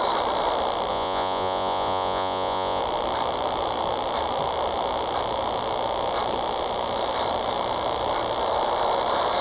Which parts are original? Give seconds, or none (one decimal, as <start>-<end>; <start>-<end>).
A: 0.0-0.9; 2.8-9.4